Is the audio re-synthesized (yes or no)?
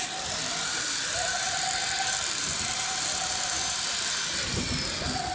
no